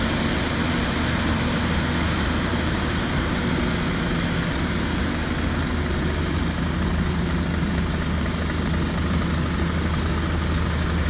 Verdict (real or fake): real